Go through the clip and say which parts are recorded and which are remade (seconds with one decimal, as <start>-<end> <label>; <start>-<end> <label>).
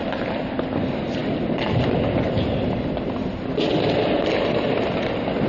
0.0-5.5 recorded